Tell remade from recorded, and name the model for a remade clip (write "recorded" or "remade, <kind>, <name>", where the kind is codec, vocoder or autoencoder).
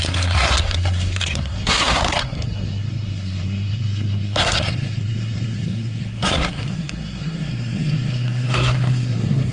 remade, codec, SNAC